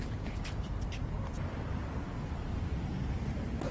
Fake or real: real